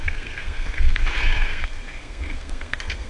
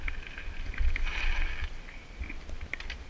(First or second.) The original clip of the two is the second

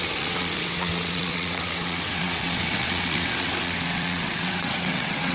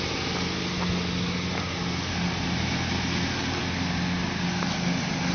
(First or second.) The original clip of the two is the second